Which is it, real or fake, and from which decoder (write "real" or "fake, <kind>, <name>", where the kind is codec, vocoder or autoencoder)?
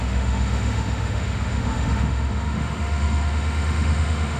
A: fake, autoencoder, DAC-VAE